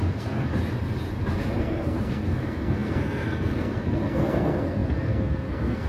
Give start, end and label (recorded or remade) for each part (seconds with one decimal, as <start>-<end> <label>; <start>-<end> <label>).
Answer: 0.0-0.5 remade; 0.5-1.6 recorded; 1.6-5.9 remade